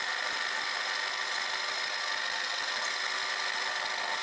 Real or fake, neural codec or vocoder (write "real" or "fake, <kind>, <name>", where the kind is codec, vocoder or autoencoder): real